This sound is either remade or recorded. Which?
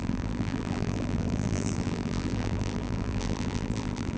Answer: remade